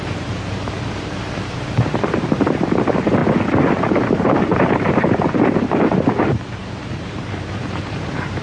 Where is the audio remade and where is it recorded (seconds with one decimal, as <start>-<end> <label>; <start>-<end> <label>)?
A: 0.0-3.2 remade; 3.2-4.2 recorded; 4.2-8.4 remade